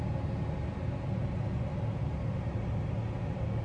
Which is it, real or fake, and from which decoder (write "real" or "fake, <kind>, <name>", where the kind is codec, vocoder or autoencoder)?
real